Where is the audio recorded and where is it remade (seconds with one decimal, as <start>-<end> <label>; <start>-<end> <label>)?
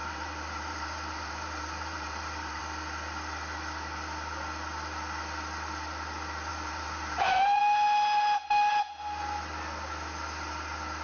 0.0-2.6 remade; 2.6-6.5 recorded; 6.5-7.6 remade; 7.6-11.0 recorded